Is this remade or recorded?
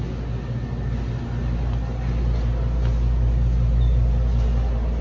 recorded